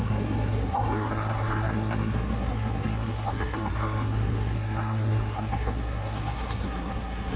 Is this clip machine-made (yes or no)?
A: yes